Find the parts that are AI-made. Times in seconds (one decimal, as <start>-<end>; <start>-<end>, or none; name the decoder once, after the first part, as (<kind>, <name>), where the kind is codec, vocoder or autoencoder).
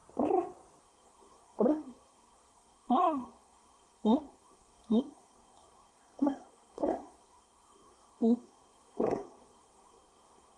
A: 0.8-10.6 (codec, SNAC)